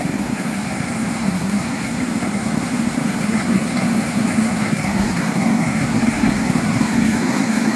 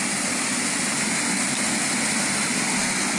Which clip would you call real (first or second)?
second